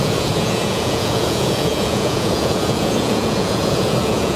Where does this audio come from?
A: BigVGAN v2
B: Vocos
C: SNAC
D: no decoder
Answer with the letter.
B